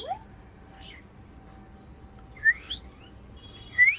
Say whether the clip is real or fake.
real